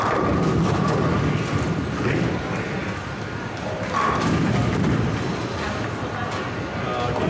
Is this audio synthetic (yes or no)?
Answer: no